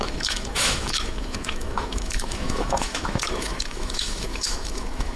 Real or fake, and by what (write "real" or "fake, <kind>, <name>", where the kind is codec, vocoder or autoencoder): fake, autoencoder, DAC-VAE